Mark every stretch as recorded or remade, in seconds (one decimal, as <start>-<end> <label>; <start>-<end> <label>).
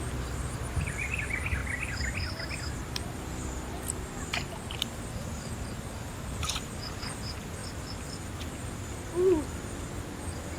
0.0-1.6 remade; 1.6-4.5 recorded; 4.5-7.6 remade; 7.6-10.6 recorded